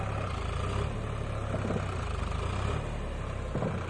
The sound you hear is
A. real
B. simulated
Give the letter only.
A